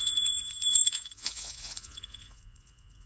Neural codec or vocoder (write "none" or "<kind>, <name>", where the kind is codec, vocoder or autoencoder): vocoder, Vocos